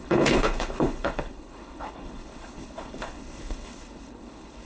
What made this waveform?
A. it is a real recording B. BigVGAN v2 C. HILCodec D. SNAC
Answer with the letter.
C